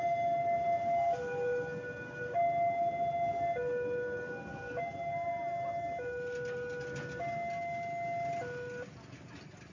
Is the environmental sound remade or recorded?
recorded